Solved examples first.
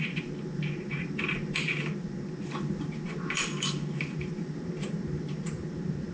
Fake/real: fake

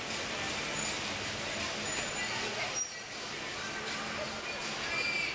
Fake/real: real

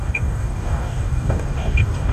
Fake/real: fake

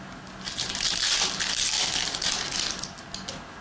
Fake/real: real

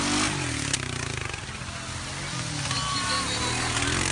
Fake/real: real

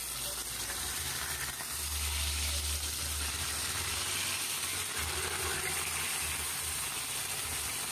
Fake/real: real